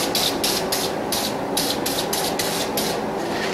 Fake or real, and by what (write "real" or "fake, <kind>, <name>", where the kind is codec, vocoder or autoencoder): real